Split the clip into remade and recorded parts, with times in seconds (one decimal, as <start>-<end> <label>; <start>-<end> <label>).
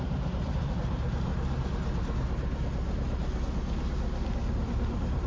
0.0-1.3 remade; 1.3-4.5 recorded; 4.5-5.3 remade